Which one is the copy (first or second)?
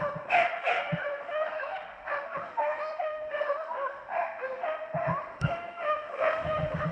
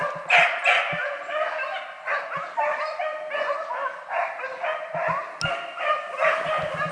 first